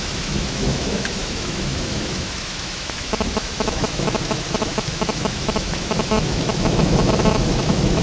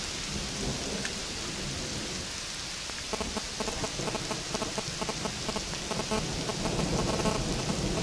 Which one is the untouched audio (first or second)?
second